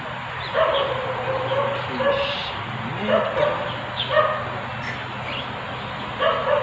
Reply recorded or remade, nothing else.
recorded